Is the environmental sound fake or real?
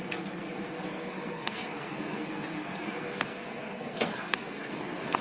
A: fake